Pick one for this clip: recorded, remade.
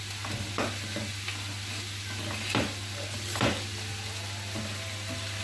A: recorded